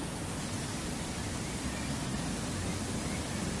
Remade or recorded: recorded